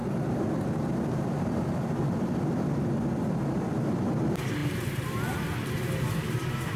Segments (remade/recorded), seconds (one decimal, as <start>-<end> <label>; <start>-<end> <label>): 0.0-6.8 recorded